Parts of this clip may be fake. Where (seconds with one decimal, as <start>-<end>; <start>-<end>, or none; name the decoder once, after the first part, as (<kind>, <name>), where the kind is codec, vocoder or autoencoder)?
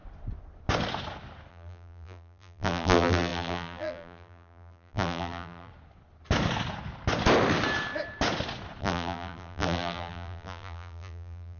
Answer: 1.5-5.7 (vocoder, BigVGAN v2); 8.8-11.6